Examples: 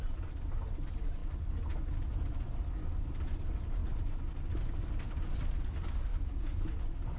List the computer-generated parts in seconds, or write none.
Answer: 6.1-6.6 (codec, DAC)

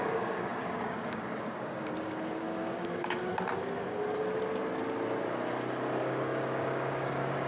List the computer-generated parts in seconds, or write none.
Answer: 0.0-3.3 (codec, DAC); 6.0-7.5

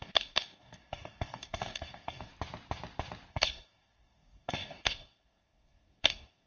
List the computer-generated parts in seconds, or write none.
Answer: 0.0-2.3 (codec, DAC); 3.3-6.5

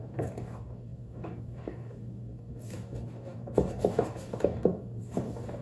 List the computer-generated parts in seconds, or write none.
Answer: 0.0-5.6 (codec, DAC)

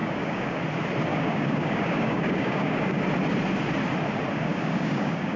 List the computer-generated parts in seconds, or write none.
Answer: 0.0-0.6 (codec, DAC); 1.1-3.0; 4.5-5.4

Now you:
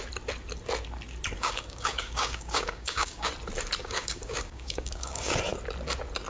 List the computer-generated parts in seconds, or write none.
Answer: 1.4-3.3 (codec, DAC); 3.8-5.3